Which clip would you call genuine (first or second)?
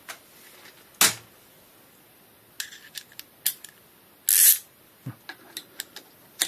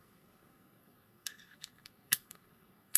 first